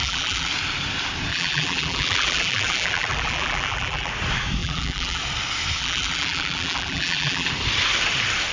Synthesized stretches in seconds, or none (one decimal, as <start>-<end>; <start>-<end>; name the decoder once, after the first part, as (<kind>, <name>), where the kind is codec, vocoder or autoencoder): 0.0-0.5 (vocoder, BigVGAN v2); 1.3-4.1; 4.6-5.2; 5.8-7.5